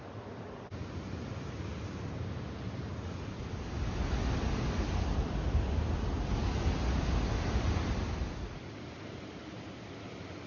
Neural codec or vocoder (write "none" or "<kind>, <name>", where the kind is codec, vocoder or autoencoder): none